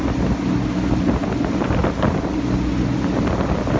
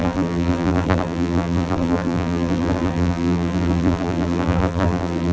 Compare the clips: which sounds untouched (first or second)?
first